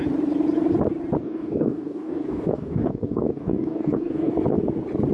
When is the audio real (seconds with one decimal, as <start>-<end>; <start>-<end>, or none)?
0.0-1.2; 4.3-5.1